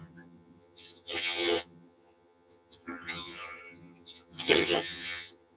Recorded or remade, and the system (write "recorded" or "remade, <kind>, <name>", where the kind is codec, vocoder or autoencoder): remade, vocoder, HiFi-GAN